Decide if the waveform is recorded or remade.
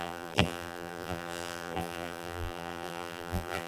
remade